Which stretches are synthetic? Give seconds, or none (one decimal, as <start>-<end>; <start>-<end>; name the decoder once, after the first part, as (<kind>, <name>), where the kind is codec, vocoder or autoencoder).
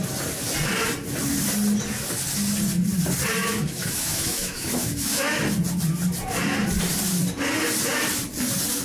3.4-5.4 (autoencoder, DAC-VAE)